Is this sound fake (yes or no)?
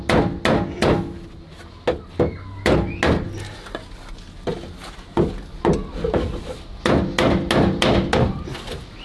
no